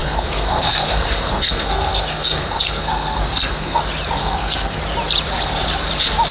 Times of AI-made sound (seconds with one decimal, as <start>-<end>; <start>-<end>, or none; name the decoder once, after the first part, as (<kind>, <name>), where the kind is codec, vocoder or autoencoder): 0.0-3.8 (codec, SNAC); 4.2-4.8